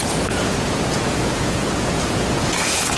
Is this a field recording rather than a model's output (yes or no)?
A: no